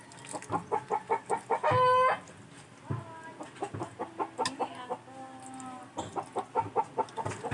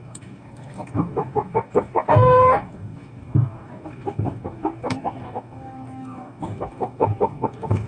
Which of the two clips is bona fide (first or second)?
first